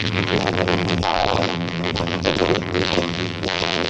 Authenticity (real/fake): fake